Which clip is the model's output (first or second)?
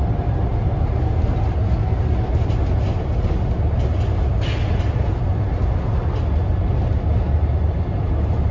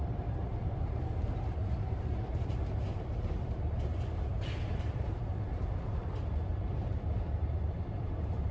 second